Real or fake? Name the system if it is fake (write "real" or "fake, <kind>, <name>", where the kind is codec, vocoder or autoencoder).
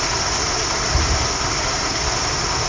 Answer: real